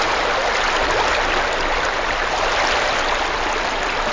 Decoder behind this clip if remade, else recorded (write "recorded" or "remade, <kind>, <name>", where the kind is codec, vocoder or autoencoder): recorded